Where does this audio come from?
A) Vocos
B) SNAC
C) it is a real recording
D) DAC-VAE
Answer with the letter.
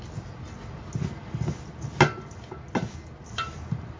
C